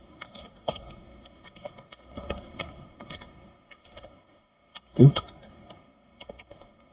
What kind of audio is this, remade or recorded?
remade